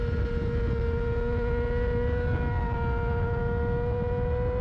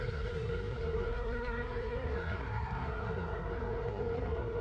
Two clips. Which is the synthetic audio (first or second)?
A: second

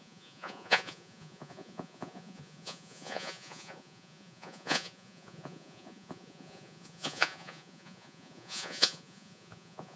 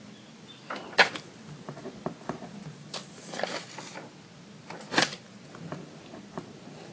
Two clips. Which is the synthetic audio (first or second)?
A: first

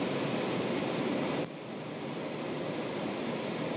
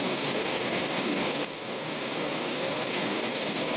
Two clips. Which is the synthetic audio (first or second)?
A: second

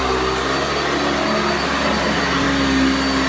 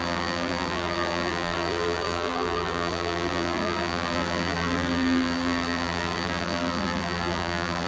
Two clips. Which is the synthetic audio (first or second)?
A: second